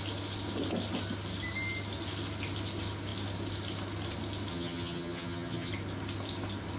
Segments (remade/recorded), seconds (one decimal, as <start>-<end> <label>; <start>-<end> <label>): 0.0-4.5 recorded; 4.5-5.7 remade; 5.7-6.8 recorded